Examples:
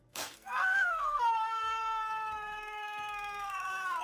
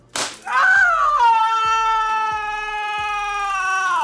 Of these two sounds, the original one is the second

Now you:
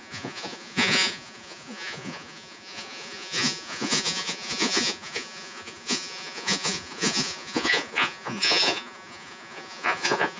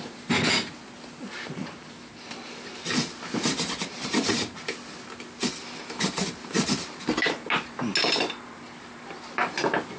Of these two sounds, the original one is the second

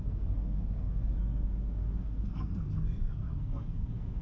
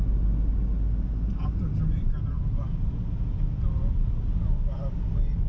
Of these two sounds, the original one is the second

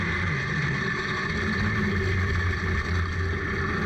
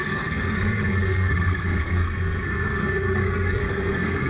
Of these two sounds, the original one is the first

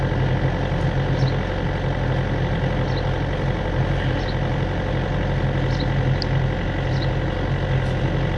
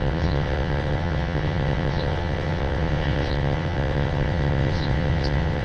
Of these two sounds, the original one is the first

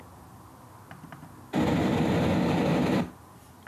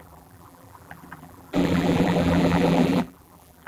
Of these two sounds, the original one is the first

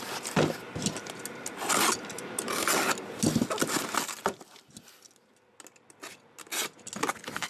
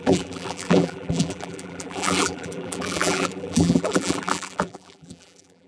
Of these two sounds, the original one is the first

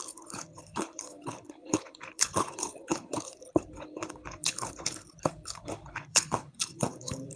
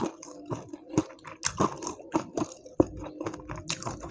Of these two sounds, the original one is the second